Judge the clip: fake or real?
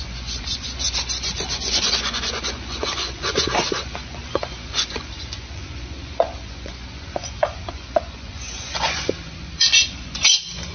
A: fake